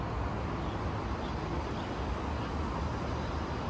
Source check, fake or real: real